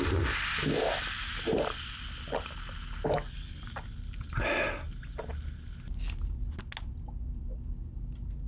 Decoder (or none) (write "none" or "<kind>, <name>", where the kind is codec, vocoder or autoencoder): none